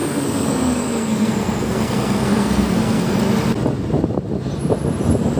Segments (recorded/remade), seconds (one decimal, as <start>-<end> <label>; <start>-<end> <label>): 0.0-3.2 remade; 3.2-5.4 recorded